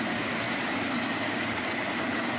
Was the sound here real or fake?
real